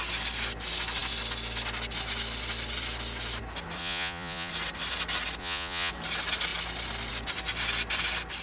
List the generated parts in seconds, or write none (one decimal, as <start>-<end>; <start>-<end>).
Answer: 3.8-4.5; 5.4-5.9

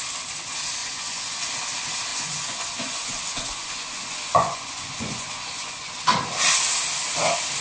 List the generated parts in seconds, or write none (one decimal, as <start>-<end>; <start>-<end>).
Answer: 0.8-1.5; 2.1-5.9

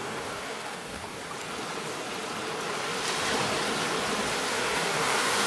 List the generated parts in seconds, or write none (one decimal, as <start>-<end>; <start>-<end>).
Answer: 0.0-1.2; 4.5-5.5

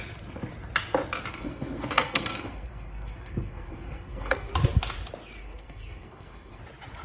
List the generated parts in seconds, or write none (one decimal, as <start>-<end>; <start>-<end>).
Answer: 1.3-4.5; 5.4-6.6

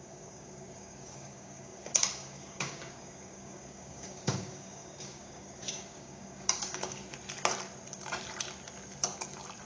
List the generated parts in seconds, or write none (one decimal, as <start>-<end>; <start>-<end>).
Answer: 0.0-7.0

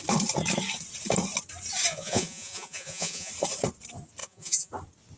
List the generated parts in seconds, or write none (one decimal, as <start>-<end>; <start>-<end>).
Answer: 1.9-3.3; 4.2-4.7

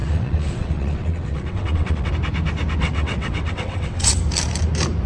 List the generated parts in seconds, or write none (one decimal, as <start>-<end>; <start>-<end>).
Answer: 0.0-2.1; 2.8-4.2

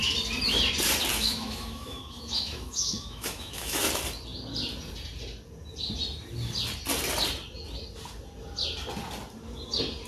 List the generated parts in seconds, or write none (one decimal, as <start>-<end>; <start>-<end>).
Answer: 1.1-3.8